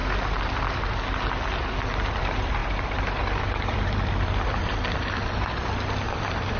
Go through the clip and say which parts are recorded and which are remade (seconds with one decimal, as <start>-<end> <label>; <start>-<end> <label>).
0.0-2.2 recorded; 2.2-6.6 remade